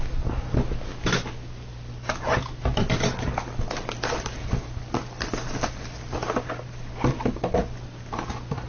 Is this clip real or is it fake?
real